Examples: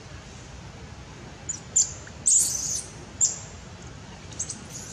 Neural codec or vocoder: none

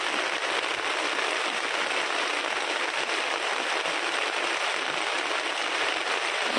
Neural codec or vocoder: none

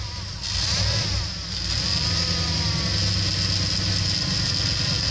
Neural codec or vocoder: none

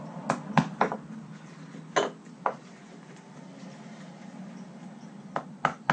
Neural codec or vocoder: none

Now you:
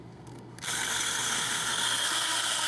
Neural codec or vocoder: codec, SNAC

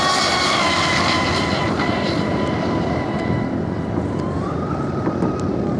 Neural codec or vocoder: none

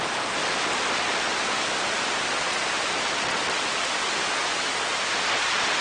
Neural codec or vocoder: none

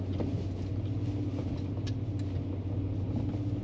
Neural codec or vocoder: none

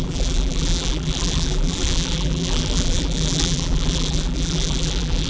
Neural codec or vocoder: vocoder, BigVGAN v2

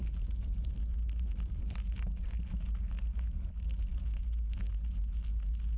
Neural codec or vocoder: none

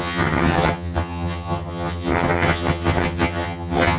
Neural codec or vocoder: vocoder, HiFi-GAN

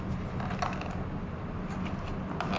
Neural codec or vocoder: none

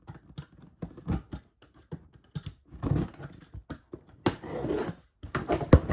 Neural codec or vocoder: none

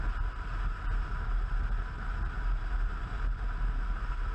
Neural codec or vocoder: none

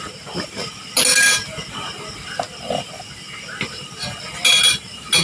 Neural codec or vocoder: none